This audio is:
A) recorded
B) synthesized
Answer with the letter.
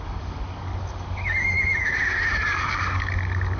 B